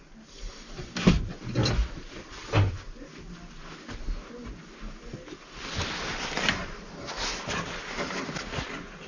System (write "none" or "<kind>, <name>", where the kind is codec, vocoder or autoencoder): none